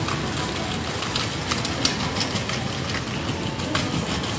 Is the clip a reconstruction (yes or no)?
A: no